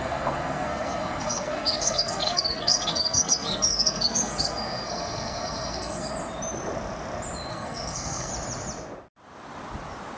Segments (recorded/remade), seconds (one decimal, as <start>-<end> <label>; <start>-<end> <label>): 0.0-6.1 remade; 6.1-7.5 recorded; 7.5-8.3 remade; 8.3-10.2 recorded